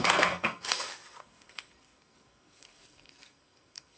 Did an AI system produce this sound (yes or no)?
yes